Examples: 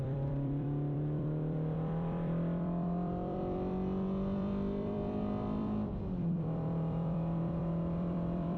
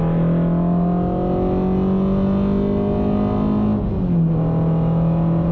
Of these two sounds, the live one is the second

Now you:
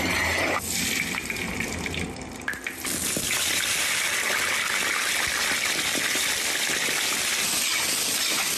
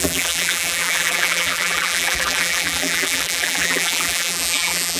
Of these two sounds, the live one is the first